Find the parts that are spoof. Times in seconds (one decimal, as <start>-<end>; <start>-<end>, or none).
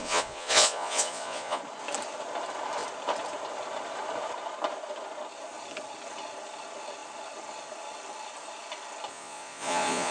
0.0-1.6; 9.1-10.1